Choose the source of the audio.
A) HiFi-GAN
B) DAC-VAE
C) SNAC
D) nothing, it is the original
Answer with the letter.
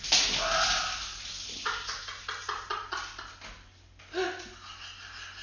D